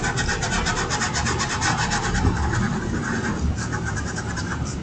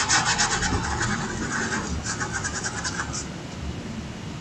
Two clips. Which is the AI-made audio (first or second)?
first